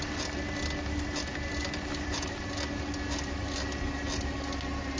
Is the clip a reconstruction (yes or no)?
no